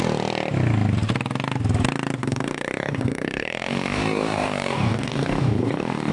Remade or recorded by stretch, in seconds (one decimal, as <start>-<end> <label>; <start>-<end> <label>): 0.0-2.2 recorded; 2.2-6.1 remade